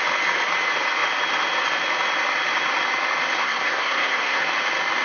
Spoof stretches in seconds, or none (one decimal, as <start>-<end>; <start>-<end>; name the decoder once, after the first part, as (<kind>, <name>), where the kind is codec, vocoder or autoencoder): 3.4-4.4 (codec, SNAC)